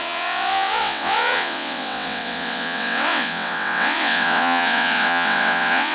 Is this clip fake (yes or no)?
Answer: yes